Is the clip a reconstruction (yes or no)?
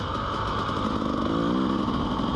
no